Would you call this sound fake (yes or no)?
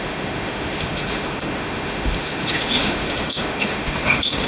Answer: yes